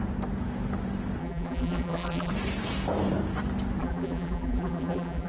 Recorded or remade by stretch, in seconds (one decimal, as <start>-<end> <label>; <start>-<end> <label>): 0.0-1.2 recorded; 1.2-2.3 remade; 2.3-3.8 recorded; 3.8-5.3 remade